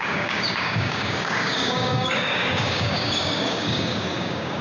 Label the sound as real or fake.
fake